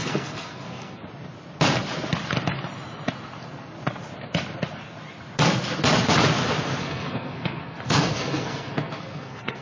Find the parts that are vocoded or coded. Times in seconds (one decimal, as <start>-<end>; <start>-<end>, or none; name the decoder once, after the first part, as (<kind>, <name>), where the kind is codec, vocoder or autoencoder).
0.0-1.0 (codec, SNAC); 6.8-9.6